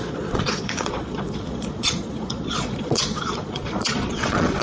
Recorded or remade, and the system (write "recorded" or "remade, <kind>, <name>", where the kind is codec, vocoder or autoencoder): remade, vocoder, Vocos